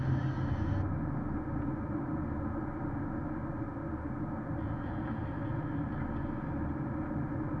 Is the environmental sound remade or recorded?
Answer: recorded